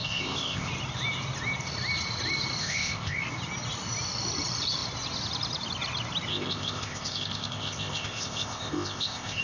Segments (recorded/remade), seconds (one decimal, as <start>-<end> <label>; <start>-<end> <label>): 0.0-0.7 remade; 0.7-2.6 recorded; 2.6-3.2 remade; 3.2-6.3 recorded; 6.3-9.4 remade